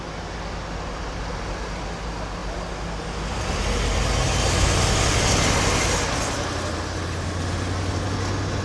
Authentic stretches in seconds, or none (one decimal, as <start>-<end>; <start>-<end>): 0.0-8.6